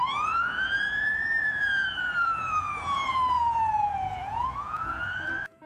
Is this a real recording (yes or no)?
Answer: no